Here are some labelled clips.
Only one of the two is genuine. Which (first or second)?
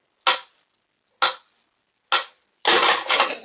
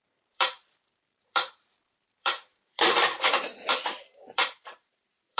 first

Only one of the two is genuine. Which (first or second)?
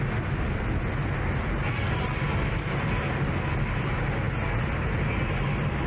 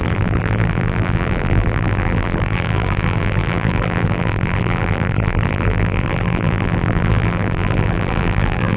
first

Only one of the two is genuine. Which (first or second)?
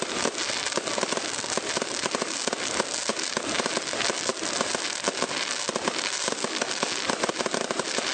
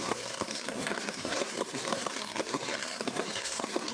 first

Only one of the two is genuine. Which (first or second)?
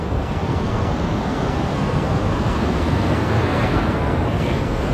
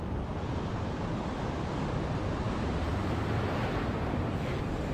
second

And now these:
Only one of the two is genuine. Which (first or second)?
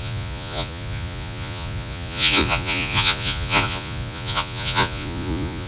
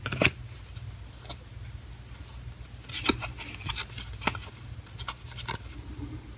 second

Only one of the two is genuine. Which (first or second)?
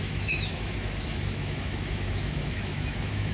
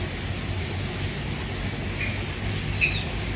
second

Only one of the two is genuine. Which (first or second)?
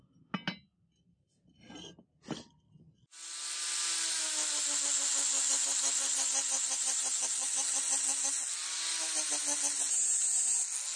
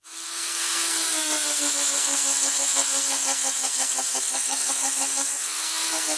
first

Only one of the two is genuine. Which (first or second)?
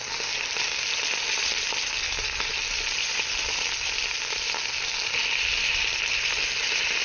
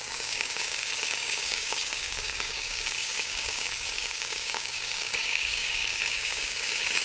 first